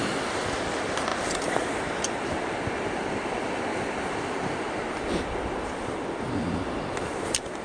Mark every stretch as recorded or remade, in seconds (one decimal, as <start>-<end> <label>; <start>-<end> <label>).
0.0-7.6 remade